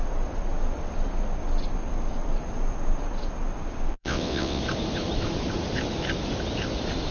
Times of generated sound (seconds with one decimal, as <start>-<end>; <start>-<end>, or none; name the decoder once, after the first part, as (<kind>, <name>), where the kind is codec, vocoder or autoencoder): 3.9-4.6 (vocoder, WaveNeXt)